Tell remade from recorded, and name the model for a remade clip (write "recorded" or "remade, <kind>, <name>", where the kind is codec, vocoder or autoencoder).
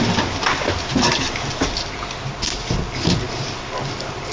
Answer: recorded